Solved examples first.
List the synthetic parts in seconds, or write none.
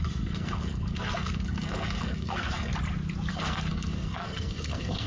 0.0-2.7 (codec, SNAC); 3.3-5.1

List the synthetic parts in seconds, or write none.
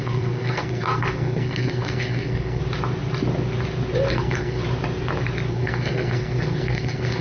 0.0-2.6 (codec, SNAC); 4.1-4.6; 5.5-7.2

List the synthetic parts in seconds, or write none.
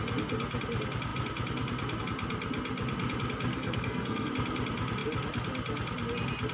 3.5-4.3 (codec, SNAC)